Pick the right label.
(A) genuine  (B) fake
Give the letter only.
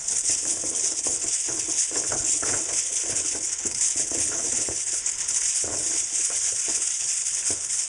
B